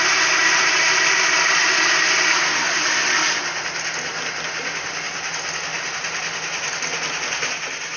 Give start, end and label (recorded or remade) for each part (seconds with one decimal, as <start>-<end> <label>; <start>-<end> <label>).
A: 0.0-8.0 recorded